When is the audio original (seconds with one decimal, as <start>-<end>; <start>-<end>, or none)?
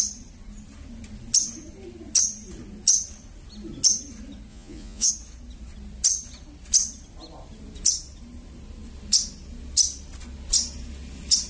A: 0.0-4.5; 5.1-11.5